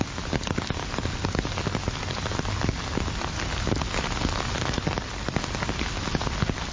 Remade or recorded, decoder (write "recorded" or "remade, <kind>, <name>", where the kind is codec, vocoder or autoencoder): recorded